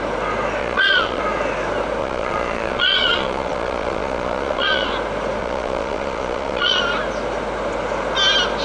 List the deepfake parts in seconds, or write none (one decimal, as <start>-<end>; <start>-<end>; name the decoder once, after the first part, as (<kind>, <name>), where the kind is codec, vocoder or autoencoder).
0.6-1.2 (vocoder, Vocos); 2.0-4.9; 5.4-6.8